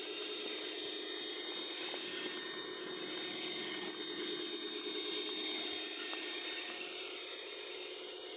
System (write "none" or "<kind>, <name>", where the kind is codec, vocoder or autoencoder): none